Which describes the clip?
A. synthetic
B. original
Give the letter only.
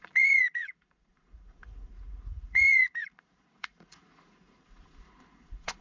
A